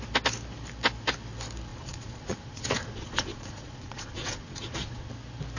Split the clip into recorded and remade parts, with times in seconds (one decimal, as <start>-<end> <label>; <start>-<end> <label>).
0.0-1.7 recorded; 1.7-5.1 remade; 5.1-5.6 recorded